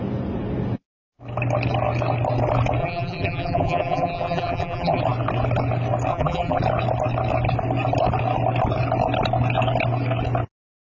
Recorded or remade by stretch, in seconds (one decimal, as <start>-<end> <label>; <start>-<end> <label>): 0.0-2.8 recorded; 2.8-5.0 remade; 5.0-6.1 recorded; 6.1-6.6 remade; 6.6-10.8 recorded